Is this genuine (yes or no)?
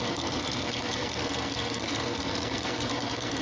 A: no